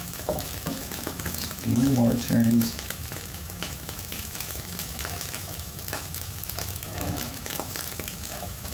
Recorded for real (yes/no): no